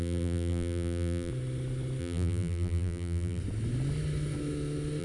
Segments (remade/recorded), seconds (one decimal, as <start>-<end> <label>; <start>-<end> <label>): 0.0-1.3 remade; 1.3-2.0 recorded; 2.0-3.4 remade; 3.4-5.0 recorded